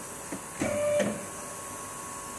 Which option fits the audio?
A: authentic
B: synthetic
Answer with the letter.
A